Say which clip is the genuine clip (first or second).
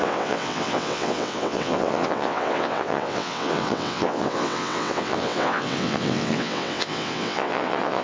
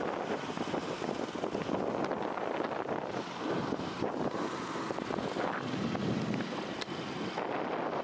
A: second